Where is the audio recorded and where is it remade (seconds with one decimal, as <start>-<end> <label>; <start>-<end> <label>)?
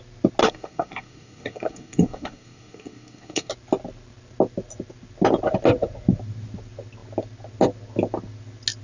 0.0-0.4 recorded; 0.4-3.5 remade; 3.5-8.8 recorded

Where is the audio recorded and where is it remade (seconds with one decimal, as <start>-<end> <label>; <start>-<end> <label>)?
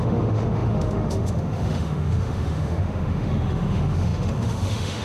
0.0-5.0 remade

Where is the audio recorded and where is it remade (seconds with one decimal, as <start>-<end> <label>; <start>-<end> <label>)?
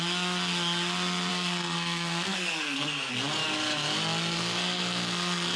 0.0-1.3 recorded; 1.3-3.1 remade; 3.1-4.3 recorded; 4.3-5.6 remade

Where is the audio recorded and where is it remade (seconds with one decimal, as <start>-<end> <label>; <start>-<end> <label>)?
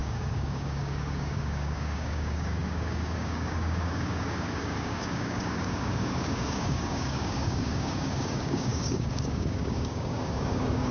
0.0-10.9 remade